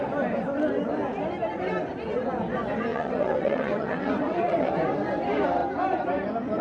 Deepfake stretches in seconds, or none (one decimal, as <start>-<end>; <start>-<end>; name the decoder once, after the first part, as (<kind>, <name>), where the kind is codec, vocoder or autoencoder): 2.9-4.7 (vocoder, WaveNeXt)

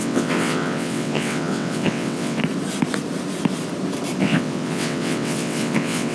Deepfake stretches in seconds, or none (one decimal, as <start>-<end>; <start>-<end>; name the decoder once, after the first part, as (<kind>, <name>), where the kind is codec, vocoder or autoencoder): 0.0-2.4 (vocoder, WaveNeXt); 4.2-6.1

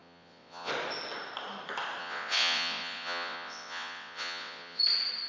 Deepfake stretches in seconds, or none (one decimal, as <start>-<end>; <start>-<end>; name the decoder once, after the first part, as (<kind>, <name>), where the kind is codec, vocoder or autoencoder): 0.0-0.7 (vocoder, WaveNeXt); 2.0-4.8

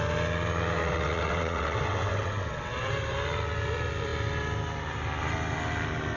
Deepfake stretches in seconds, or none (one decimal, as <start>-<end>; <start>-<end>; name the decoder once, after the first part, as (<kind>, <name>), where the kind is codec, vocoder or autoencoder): 0.8-2.9 (vocoder, WaveNeXt)